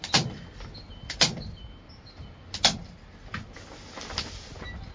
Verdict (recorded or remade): recorded